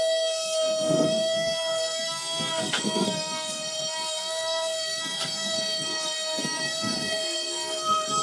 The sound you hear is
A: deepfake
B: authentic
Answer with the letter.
A